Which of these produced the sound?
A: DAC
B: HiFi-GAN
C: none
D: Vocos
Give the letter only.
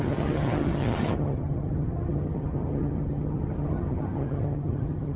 B